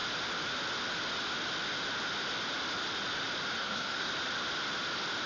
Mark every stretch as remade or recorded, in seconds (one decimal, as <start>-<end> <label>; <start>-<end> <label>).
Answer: 0.0-3.6 recorded; 3.6-4.1 remade; 4.1-5.3 recorded